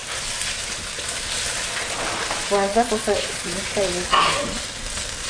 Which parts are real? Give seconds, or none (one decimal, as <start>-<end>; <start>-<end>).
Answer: 0.0-2.7; 3.6-5.3